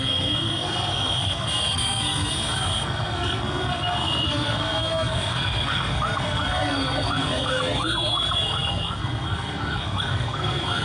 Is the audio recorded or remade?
remade